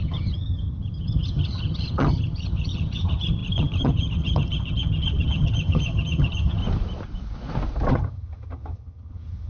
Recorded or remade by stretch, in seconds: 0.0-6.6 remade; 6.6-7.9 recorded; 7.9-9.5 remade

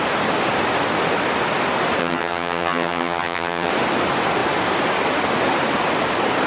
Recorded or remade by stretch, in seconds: 0.0-2.0 recorded; 2.0-3.7 remade; 3.7-6.5 recorded

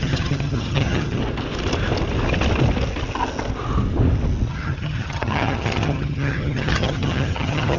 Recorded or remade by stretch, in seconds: 0.0-1.2 remade; 1.2-4.5 recorded; 4.5-7.8 remade

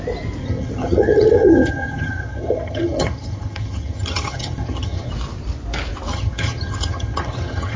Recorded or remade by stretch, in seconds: 0.0-0.4 recorded; 0.4-5.1 remade; 5.1-6.1 recorded; 6.1-7.8 remade

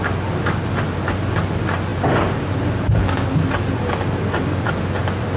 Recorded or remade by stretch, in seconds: 0.0-5.4 recorded

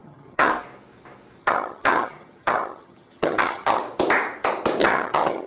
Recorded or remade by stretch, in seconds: 0.0-0.5 remade; 0.5-1.4 recorded; 1.4-3.8 remade; 3.8-4.8 recorded; 4.8-5.5 remade